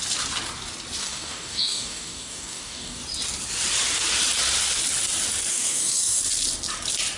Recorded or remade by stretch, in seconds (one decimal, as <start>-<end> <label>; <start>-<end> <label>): 0.0-1.0 recorded; 1.0-3.0 remade; 3.0-5.5 recorded; 5.5-6.2 remade; 6.2-7.2 recorded